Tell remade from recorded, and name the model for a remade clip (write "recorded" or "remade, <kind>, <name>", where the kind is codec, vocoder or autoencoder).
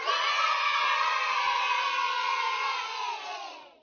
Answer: remade, vocoder, Vocos